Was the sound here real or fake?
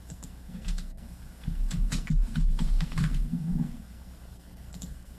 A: fake